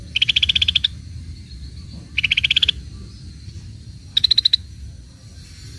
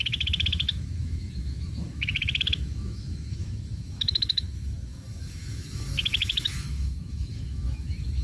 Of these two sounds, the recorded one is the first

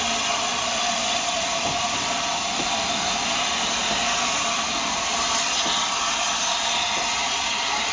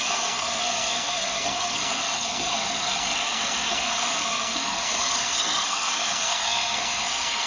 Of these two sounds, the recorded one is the first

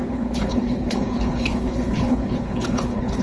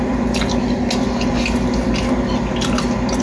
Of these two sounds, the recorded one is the second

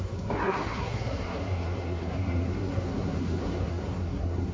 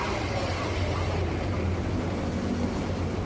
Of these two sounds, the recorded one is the second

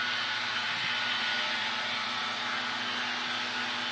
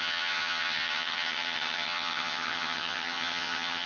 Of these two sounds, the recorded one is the first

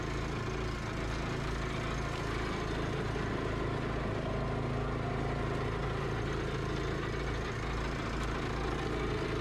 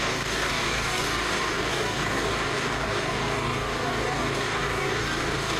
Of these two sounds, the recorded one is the first